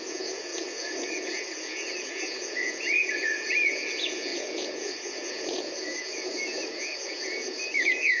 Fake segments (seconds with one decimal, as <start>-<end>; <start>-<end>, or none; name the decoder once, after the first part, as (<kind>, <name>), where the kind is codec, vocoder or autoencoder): 0.0-8.2 (vocoder, Vocos)